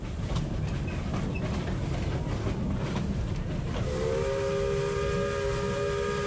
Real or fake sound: real